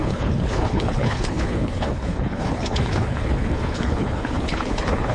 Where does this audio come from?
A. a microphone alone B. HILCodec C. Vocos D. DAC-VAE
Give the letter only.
B